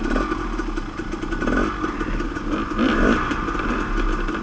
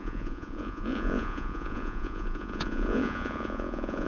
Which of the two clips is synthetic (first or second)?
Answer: second